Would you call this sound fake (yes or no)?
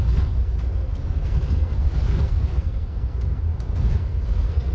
yes